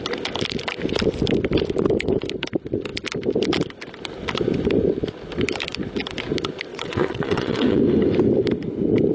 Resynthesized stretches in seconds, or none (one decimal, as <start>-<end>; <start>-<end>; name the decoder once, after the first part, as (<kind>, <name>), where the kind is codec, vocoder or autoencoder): 6.7-7.8 (vocoder, WaveNeXt)